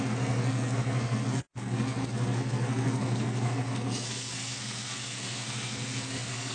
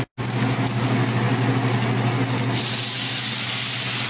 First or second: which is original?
second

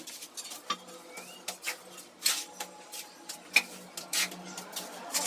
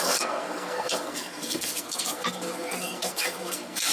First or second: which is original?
first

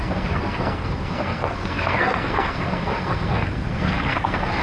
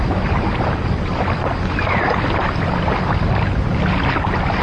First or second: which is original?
second